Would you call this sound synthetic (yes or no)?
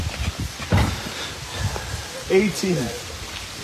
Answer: no